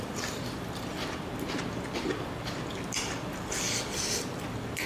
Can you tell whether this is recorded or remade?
remade